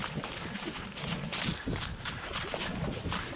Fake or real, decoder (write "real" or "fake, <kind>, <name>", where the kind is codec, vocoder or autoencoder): real